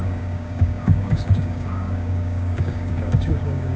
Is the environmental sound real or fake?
fake